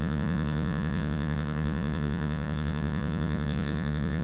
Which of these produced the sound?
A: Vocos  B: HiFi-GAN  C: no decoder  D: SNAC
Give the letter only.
A